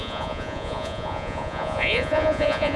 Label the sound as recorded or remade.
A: remade